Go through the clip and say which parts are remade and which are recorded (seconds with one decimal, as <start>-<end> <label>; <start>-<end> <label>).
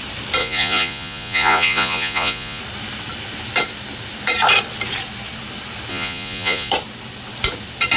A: 0.0-0.4 recorded; 0.4-2.6 remade; 2.6-5.9 recorded; 5.9-6.7 remade; 6.7-8.0 recorded